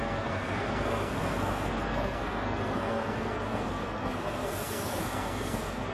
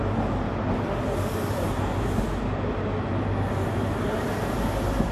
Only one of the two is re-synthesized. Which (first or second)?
first